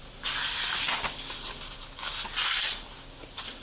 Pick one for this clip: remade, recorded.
recorded